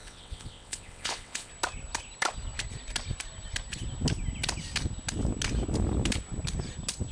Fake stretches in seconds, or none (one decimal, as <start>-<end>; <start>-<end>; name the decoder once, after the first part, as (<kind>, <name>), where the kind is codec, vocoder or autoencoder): 0.0-1.5 (vocoder, WaveNeXt)

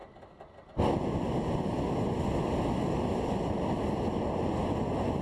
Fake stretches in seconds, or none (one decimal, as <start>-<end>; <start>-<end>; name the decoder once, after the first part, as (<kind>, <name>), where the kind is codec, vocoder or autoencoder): none

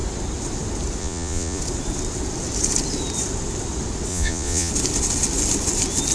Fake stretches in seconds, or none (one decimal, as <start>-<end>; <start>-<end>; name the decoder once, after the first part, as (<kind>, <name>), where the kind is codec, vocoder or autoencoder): 1.0-1.6 (vocoder, Vocos); 4.1-4.7

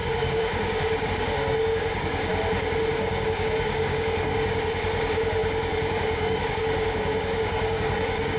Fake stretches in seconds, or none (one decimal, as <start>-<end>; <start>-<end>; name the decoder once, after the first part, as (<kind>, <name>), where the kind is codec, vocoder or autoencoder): 0.0-2.3 (codec, DAC); 2.9-8.4

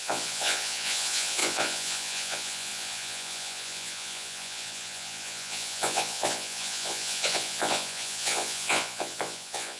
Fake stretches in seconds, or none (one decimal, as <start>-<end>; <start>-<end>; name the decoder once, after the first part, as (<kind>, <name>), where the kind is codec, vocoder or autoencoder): 0.0-9.8 (vocoder, Vocos)

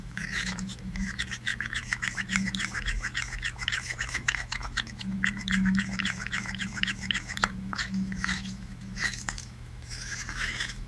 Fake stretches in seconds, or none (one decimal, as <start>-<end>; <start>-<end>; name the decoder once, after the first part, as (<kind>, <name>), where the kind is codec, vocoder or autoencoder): 0.0-10.9 (autoencoder, DAC-VAE)